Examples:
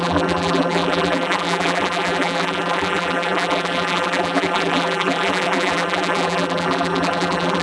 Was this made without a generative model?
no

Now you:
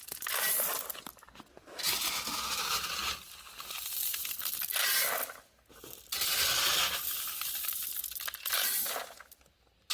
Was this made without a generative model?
yes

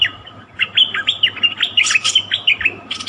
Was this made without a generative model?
yes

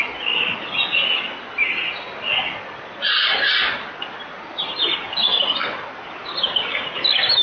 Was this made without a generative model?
yes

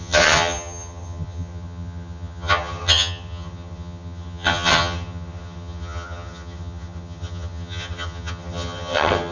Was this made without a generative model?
no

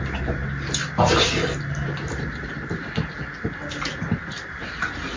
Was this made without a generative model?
yes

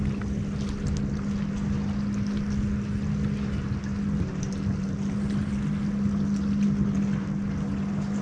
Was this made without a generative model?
yes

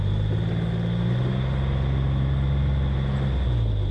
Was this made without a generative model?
yes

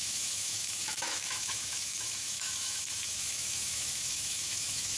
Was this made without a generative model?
no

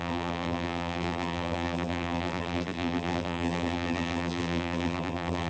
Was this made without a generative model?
no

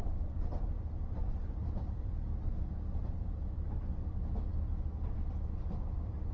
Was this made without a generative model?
yes